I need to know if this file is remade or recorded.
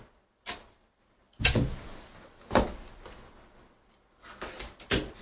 recorded